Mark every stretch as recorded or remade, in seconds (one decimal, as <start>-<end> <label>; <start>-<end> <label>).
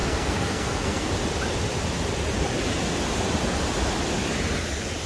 0.0-1.1 remade; 1.1-5.1 recorded